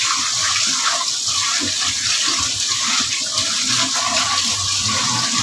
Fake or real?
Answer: real